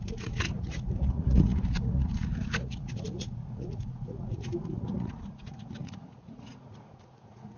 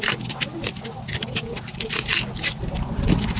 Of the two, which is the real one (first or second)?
second